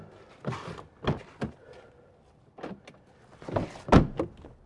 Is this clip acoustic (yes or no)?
yes